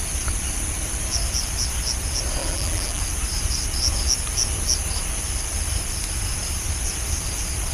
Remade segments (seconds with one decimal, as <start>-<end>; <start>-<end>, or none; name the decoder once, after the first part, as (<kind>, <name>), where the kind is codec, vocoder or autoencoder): 2.4-3.0 (vocoder, BigVGAN v2)